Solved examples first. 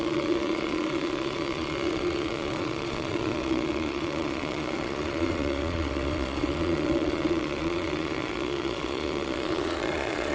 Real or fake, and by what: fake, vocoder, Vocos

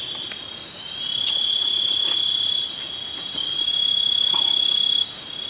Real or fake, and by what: real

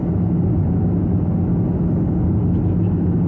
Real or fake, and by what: real